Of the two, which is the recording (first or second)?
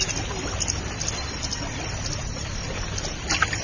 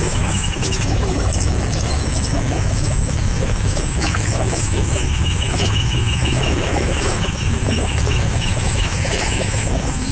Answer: first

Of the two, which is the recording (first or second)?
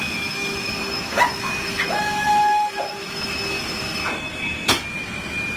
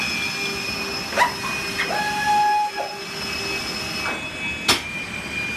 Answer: second